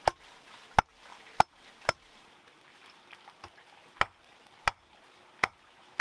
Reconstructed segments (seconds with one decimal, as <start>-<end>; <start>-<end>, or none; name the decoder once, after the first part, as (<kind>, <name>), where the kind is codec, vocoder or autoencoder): none